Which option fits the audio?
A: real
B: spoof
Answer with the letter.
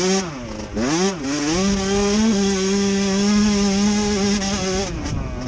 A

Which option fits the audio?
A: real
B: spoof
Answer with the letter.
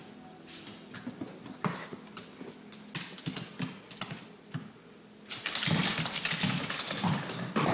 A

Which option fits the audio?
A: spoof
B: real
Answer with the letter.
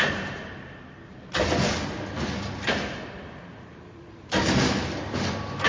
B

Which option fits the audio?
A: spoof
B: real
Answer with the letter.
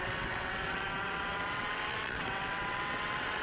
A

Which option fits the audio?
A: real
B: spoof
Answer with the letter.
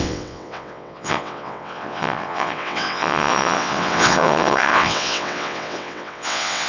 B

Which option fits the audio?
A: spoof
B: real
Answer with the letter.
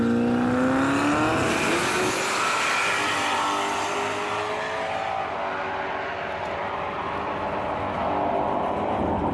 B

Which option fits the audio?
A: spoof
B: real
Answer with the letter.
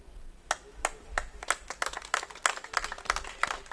B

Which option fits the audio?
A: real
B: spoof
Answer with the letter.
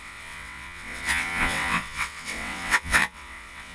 B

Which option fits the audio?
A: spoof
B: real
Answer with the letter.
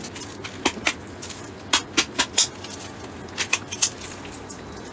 B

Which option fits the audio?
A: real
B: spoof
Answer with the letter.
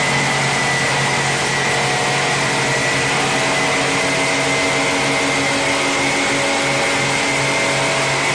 A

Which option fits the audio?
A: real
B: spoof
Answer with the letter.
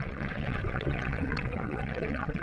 B